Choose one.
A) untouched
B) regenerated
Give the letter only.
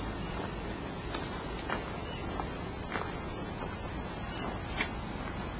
A